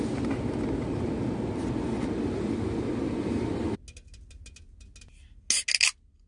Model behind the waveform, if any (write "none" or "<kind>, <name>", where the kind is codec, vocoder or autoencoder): none